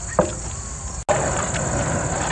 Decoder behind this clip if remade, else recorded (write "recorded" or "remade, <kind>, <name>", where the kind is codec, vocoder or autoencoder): recorded